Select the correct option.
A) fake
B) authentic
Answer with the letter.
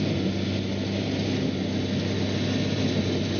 B